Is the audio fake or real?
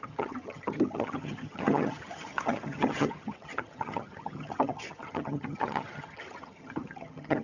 fake